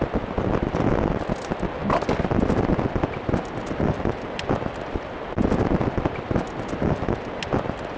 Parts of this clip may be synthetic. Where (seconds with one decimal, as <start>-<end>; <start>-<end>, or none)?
none